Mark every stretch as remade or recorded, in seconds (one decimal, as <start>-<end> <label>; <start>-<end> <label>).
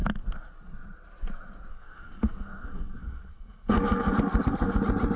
0.0-1.7 recorded; 1.7-4.8 remade; 4.8-5.2 recorded